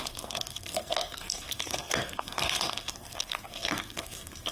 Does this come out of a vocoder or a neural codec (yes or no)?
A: yes